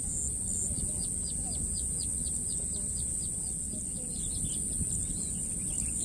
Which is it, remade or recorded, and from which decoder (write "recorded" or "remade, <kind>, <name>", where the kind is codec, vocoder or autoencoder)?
recorded